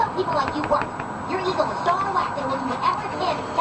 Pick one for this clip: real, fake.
real